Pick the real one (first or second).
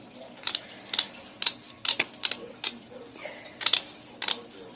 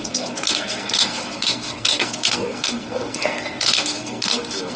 first